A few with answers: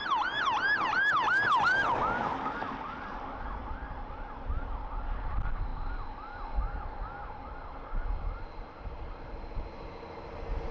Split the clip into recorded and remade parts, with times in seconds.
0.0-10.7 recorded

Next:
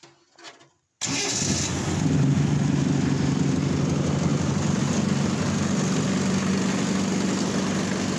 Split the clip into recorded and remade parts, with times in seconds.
0.0-4.3 recorded; 4.3-6.5 remade; 6.5-8.2 recorded